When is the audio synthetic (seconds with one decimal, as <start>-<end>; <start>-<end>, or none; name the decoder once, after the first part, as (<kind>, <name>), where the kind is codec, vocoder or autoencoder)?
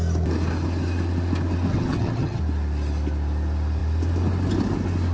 1.7-2.4 (vocoder, HiFi-GAN)